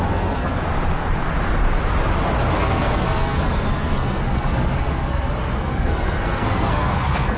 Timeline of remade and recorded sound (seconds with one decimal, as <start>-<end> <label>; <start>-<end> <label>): 0.0-0.6 remade; 0.6-2.6 recorded; 2.6-7.4 remade